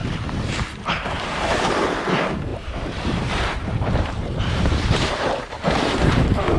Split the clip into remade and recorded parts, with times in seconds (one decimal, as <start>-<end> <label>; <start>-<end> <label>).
0.0-1.5 remade; 1.5-2.5 recorded; 2.5-6.6 remade